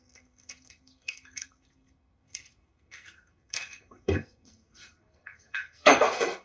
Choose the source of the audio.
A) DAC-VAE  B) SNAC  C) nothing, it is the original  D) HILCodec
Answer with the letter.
B